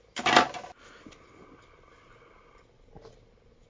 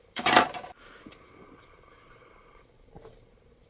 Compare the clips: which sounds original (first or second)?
first